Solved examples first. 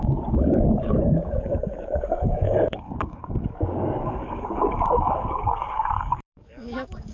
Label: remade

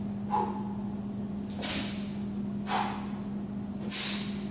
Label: recorded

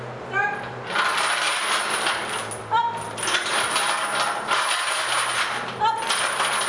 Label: recorded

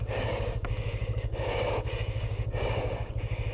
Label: remade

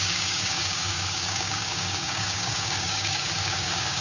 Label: remade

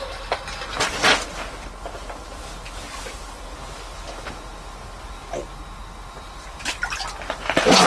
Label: recorded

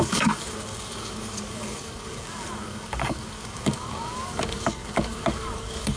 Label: remade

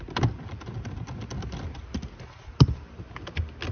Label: recorded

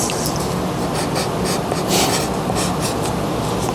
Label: recorded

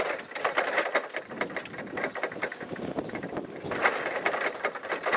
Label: recorded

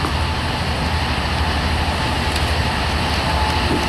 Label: recorded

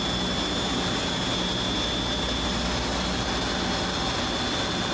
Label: recorded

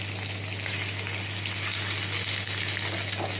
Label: recorded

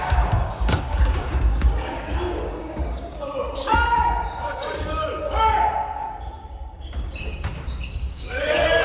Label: remade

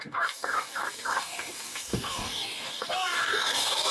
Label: remade